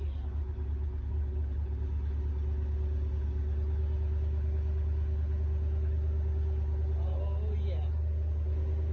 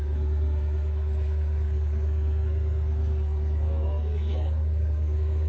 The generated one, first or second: second